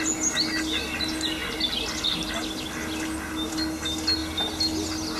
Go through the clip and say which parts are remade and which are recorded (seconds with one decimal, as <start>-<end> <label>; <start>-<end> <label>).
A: 0.0-5.2 recorded